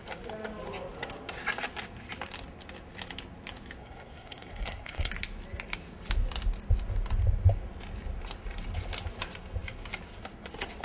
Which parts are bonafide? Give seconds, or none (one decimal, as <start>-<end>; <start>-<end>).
0.0-3.8; 5.1-10.8